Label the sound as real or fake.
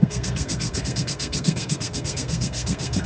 fake